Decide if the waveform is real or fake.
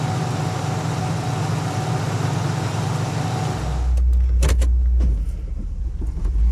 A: real